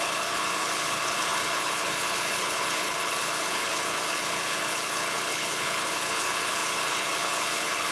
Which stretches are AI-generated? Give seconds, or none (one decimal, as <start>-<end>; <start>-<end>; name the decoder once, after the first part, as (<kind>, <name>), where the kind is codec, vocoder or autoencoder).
0.0-7.9 (codec, HILCodec)